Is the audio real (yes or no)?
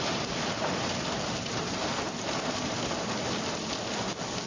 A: yes